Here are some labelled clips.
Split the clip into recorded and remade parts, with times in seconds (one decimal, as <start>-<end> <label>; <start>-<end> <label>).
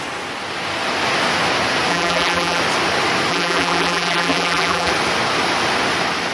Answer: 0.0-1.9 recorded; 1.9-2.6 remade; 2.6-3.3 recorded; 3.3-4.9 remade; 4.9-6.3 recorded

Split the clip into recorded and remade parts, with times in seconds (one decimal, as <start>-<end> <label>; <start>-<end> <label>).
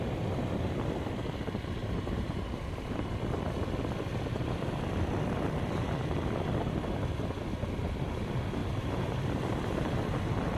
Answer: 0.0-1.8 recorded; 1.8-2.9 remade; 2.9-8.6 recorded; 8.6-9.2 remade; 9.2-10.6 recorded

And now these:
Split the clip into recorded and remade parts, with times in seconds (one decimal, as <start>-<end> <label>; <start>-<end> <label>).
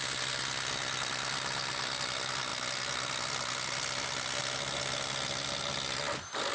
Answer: 0.0-6.5 recorded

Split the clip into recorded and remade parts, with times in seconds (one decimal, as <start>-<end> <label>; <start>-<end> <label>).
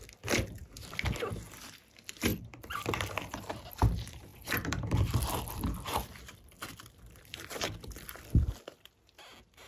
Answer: 0.0-2.3 recorded; 2.3-3.2 remade; 3.2-4.3 recorded; 4.3-8.9 remade; 8.9-9.7 recorded